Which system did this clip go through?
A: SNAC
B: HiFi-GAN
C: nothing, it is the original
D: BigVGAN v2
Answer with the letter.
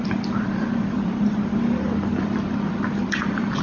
D